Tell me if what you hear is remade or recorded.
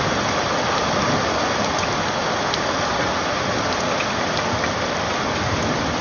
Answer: recorded